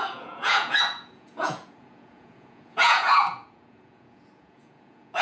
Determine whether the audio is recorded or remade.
remade